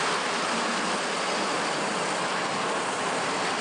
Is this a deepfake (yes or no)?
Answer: no